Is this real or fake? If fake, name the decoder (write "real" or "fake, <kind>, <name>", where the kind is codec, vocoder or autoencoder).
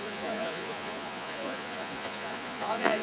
fake, vocoder, Vocos